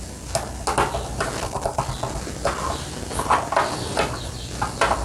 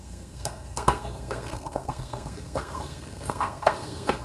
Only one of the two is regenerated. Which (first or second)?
second